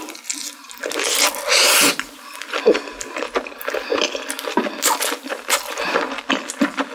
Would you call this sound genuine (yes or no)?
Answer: yes